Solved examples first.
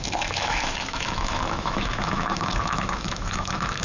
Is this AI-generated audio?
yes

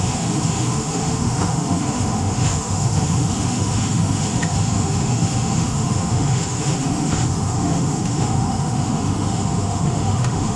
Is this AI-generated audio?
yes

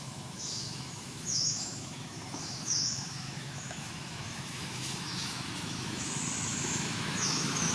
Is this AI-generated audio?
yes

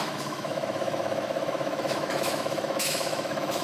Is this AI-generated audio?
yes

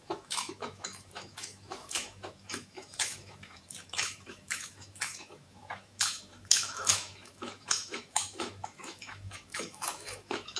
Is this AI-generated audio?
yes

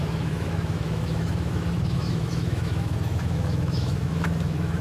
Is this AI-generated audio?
yes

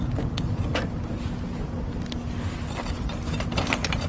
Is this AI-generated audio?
no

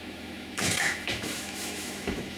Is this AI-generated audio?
yes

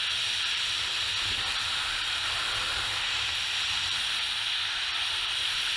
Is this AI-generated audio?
no